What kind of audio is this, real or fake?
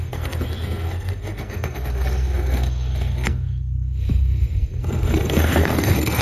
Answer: fake